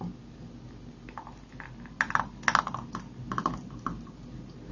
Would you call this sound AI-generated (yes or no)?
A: no